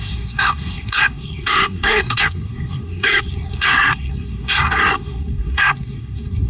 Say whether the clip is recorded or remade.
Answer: remade